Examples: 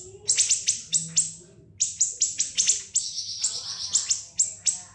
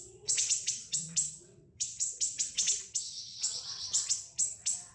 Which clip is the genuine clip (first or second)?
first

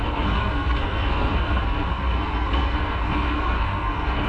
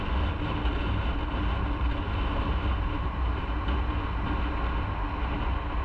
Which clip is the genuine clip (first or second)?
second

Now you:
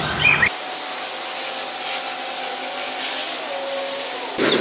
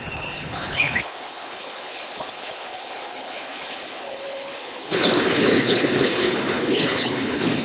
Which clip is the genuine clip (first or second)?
first